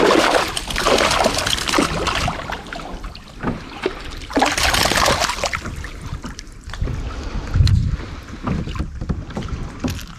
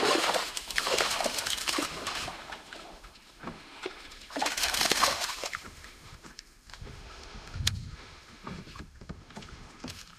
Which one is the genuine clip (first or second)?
first